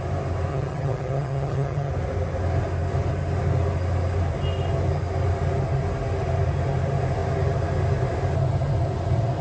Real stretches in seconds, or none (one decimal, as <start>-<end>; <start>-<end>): 0.0-0.5; 1.9-9.4